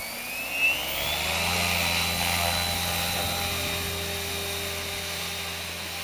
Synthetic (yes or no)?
no